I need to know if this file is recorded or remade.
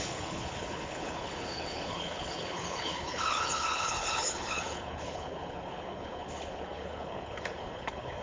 remade